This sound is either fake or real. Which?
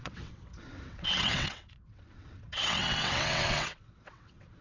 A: fake